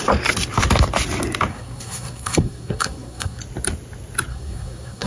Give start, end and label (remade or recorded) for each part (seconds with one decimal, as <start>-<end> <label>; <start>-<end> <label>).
0.0-1.5 recorded; 1.5-3.4 remade; 3.4-4.3 recorded; 4.3-5.1 remade